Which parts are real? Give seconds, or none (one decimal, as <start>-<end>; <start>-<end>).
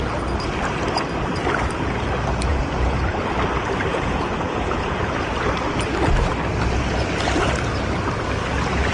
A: 0.0-2.5; 3.0-3.9; 5.3-8.9